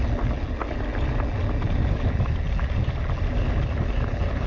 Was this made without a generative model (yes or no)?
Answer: yes